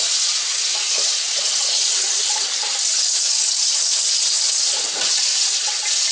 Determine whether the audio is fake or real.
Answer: real